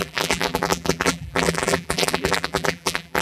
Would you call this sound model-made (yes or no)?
yes